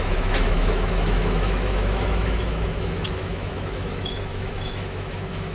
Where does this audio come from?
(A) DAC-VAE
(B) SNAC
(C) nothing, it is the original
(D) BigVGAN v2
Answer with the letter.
A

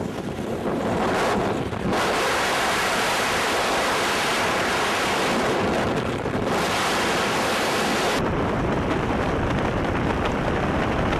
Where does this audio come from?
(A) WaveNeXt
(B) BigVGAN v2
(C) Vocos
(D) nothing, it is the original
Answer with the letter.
B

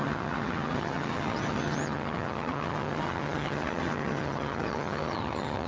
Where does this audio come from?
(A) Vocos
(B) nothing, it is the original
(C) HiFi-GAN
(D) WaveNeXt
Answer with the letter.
C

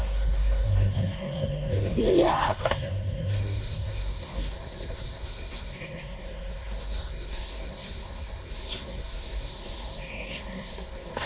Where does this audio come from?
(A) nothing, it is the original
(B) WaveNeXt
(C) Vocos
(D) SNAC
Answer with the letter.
D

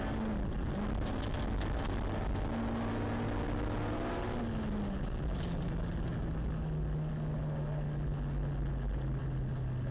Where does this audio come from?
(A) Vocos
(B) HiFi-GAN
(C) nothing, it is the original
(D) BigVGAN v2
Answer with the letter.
C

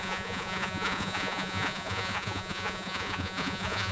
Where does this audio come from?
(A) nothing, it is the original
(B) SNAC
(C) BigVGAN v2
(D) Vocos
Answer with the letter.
D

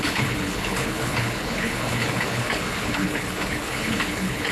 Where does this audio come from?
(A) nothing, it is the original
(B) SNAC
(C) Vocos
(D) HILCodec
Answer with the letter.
D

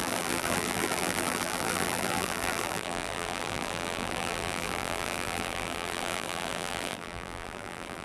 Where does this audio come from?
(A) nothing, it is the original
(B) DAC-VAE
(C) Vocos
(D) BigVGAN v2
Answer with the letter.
D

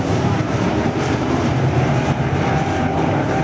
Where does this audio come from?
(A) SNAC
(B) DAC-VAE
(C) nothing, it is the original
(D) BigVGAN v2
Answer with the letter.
D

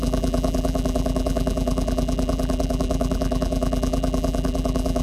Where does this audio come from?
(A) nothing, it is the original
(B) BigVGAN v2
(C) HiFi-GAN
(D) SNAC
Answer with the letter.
B